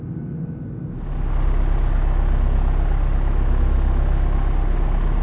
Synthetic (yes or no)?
no